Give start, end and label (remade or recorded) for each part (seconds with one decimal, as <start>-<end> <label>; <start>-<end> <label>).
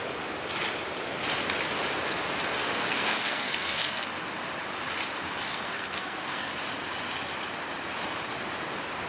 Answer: 0.0-2.5 recorded; 2.5-4.1 remade; 4.1-5.5 recorded; 5.5-6.5 remade; 6.5-9.1 recorded